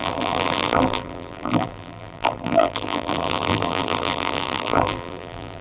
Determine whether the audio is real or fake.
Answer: fake